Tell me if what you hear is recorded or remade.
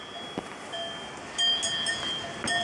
recorded